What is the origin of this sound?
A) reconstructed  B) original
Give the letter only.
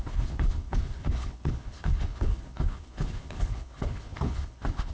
A